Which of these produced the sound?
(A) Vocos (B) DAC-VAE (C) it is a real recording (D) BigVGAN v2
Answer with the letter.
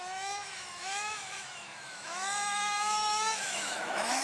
B